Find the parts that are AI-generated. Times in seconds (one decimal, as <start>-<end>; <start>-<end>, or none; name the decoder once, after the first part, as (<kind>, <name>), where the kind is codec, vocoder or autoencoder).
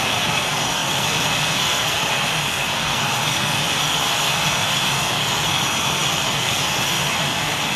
0.0-7.8 (codec, SNAC)